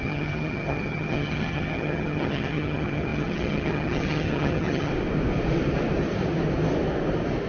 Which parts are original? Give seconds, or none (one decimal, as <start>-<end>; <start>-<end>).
4.9-7.5

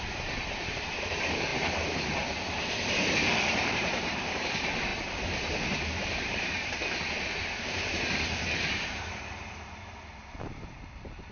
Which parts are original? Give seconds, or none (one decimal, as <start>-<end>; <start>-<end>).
4.9-5.9

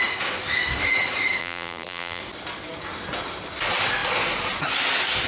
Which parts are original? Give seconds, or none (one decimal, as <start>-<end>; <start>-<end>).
0.0-1.4; 2.2-5.3